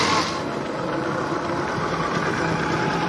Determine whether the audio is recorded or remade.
recorded